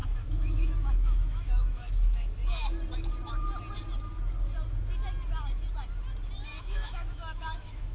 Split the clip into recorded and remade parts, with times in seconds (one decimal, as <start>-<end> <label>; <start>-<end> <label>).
0.0-2.4 remade; 2.4-6.6 recorded; 6.6-7.9 remade